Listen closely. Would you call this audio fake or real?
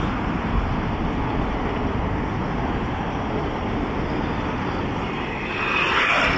real